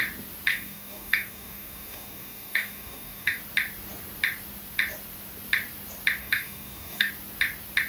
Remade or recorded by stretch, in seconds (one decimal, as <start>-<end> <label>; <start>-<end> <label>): 0.0-0.5 recorded; 0.5-3.4 remade; 3.4-6.2 recorded; 6.2-7.1 remade; 7.1-7.9 recorded